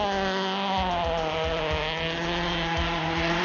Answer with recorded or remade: recorded